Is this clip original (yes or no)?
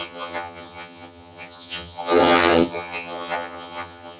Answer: no